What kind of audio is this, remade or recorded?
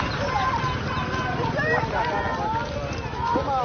recorded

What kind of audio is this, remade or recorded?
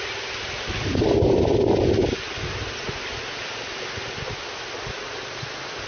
recorded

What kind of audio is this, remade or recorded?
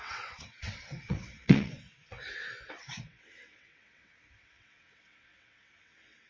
remade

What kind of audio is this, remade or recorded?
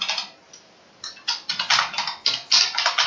recorded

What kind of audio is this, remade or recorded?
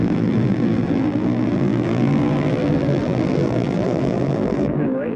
remade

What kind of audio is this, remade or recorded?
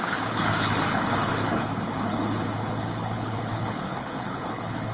remade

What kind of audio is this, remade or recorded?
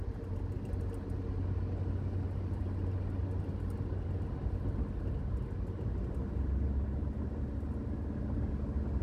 recorded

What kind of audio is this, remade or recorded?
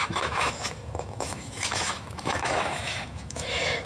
remade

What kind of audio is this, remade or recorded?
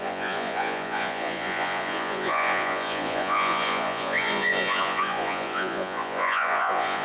remade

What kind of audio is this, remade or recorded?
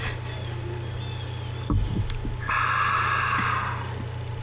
recorded